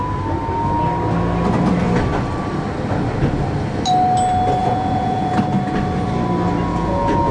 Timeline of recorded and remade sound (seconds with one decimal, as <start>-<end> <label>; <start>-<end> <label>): 0.0-4.6 recorded; 4.6-5.3 remade; 5.3-6.7 recorded; 6.7-7.3 remade